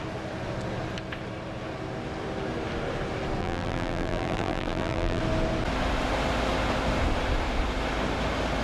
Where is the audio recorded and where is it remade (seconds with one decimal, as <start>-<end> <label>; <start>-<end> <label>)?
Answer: 0.0-3.4 recorded; 3.4-5.2 remade; 5.2-8.6 recorded